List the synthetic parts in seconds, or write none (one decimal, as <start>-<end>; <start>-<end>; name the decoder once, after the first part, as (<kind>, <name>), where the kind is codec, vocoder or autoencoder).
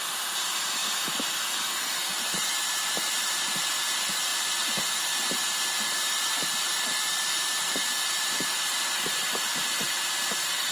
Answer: 0.0-0.8 (vocoder, BigVGAN v2); 2.2-10.7